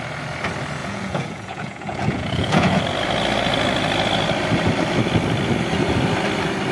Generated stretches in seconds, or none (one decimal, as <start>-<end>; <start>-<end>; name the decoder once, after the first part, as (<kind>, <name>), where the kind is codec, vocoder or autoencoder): 0.8-2.8 (vocoder, Vocos)